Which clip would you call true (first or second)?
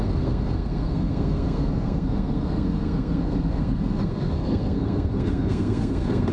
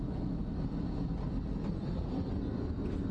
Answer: second